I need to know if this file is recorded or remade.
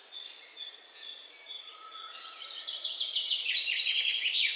remade